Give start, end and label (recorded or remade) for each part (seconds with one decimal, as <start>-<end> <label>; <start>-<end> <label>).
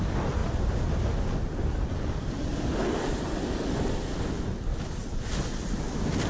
0.0-6.3 recorded